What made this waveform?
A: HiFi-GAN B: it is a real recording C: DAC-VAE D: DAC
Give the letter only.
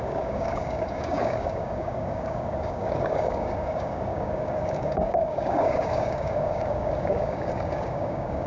D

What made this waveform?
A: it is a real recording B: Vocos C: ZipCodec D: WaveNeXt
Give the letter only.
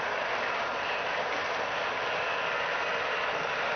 A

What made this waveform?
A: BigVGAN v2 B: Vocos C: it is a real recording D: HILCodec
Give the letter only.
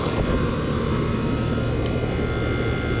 C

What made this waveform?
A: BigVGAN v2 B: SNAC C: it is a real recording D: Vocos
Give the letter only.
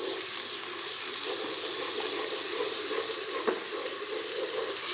A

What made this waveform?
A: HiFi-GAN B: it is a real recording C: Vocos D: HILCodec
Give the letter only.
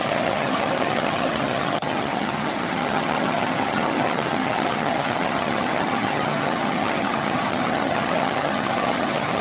A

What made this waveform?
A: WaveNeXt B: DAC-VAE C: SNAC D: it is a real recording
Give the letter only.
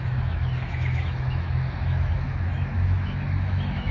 B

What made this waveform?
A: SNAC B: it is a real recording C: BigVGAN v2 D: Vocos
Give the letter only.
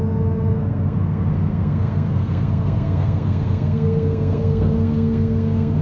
A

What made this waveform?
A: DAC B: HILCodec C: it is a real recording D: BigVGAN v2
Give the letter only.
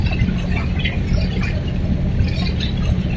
C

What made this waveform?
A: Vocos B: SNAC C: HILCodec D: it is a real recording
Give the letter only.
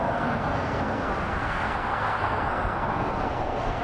B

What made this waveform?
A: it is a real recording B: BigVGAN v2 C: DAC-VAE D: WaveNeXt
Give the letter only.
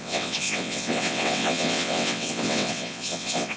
D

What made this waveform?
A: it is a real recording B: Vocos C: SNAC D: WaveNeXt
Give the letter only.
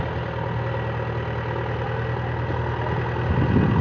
A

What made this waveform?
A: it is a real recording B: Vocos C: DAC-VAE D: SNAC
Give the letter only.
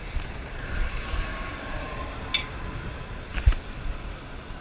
A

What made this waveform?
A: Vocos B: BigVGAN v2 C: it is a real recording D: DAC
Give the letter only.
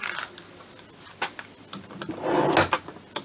C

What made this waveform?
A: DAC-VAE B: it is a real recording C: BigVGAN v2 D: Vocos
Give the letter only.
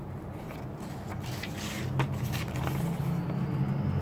B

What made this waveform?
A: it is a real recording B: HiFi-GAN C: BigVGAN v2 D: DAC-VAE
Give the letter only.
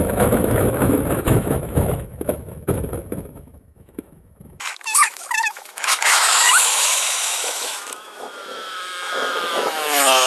D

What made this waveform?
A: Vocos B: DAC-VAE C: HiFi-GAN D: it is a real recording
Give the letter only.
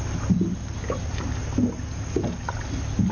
D